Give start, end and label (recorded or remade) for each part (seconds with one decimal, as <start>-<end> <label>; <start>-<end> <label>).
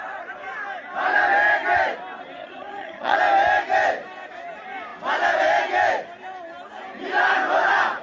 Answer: 0.0-2.4 recorded; 2.4-3.2 remade; 3.2-8.0 recorded